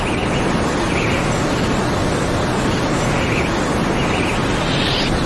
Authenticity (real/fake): real